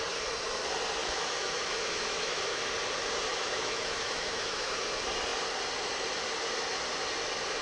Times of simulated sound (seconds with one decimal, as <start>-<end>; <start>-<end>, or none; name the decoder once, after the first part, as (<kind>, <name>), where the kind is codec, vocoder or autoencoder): 1.0-2.6 (autoencoder, DAC-VAE); 3.3-4.8